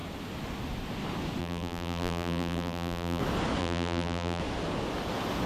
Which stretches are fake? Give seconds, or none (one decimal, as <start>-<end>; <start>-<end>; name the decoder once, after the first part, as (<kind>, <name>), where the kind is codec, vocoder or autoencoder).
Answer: 1.4-3.2 (vocoder, BigVGAN v2); 3.6-4.4